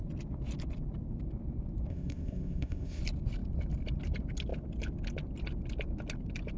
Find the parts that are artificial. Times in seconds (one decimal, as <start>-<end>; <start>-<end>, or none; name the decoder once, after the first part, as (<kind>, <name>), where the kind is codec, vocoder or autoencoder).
1.9-3.0 (codec, ZipCodec)